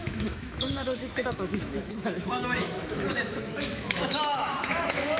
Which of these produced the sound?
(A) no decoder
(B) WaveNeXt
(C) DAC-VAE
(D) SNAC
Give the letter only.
C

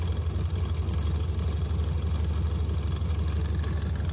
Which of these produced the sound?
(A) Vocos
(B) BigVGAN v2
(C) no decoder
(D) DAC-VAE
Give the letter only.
C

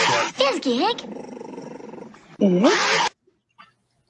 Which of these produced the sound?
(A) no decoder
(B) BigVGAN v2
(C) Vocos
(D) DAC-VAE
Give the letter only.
A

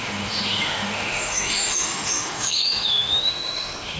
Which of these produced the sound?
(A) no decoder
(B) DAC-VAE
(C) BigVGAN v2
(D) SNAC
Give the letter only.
B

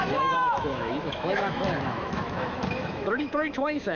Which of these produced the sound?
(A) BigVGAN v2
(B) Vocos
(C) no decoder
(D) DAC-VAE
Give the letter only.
D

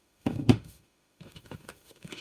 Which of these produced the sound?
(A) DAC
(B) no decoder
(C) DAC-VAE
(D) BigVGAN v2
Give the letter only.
C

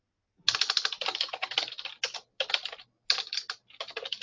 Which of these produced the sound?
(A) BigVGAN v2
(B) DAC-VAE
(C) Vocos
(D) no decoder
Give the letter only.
D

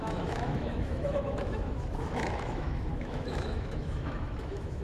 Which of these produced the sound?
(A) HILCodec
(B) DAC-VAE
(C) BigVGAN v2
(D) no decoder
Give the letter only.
B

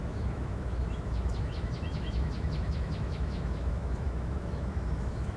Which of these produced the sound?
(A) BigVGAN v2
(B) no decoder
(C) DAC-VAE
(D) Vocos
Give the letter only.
C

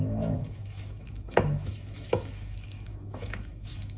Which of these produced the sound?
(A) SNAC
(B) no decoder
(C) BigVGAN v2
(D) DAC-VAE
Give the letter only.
D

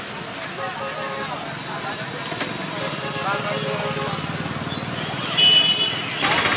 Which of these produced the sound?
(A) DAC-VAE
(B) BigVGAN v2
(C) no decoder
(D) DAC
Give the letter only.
C